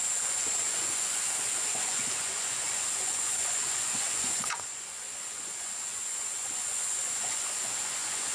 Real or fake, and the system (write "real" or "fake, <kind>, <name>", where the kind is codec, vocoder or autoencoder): fake, vocoder, Vocos